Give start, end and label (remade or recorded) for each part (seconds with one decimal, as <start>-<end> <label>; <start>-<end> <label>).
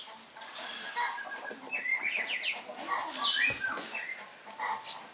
0.0-5.1 recorded